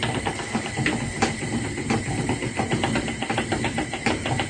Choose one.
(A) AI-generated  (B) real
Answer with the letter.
B